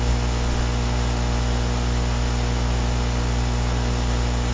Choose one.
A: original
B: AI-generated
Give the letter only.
A